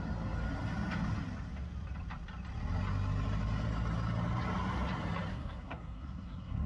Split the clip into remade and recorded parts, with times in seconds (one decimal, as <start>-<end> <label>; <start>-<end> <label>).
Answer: 0.0-5.3 recorded; 5.3-6.7 remade